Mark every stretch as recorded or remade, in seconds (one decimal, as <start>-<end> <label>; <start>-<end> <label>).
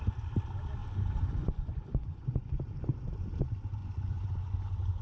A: 0.0-0.8 recorded; 0.8-2.6 remade; 2.6-3.8 recorded; 3.8-5.0 remade